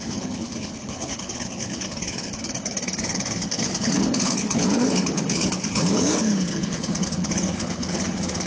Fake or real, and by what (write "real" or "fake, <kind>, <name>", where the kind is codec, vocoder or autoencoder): fake, codec, HILCodec